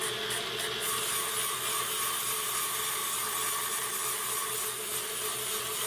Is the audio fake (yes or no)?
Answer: no